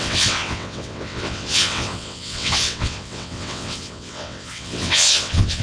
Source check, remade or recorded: remade